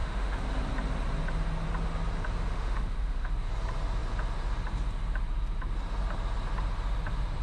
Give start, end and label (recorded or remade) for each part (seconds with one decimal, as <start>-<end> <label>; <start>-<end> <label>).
0.0-0.5 remade; 0.5-2.5 recorded; 2.5-3.3 remade; 3.3-7.4 recorded

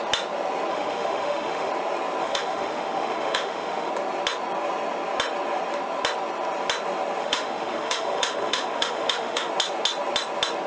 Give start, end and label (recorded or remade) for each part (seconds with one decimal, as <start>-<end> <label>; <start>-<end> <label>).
0.0-0.7 recorded; 0.7-1.7 remade; 1.7-2.2 recorded; 2.2-3.9 remade; 3.9-7.2 recorded; 7.2-9.5 remade; 9.5-10.7 recorded

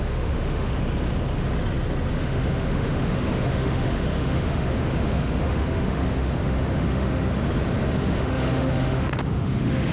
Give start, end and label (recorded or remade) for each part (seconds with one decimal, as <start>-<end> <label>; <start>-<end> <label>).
0.0-0.7 remade; 0.7-2.1 recorded; 2.1-7.3 remade; 7.3-7.9 recorded; 7.9-9.9 remade

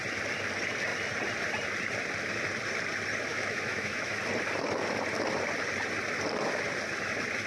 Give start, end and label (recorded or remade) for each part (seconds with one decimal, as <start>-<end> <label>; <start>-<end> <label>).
0.0-3.3 recorded; 3.3-4.2 remade; 4.2-7.5 recorded